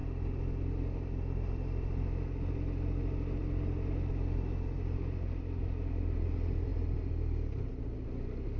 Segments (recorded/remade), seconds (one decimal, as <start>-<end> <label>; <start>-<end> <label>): 0.0-8.6 recorded